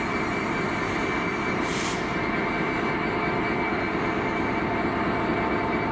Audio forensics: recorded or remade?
recorded